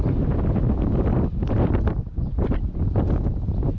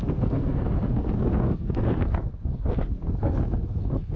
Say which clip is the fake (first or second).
second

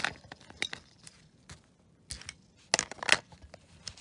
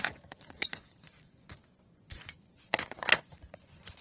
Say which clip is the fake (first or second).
second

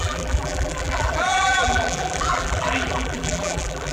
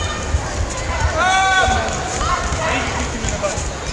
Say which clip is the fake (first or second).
first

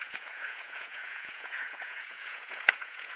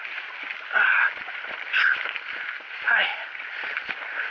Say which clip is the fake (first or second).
first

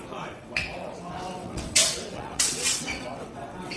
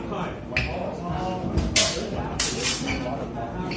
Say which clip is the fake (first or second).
first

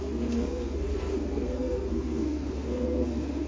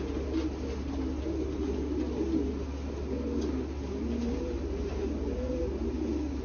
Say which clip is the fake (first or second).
first